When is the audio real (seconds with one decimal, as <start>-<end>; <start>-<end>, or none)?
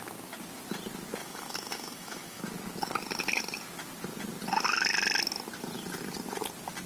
0.0-1.2; 2.4-6.9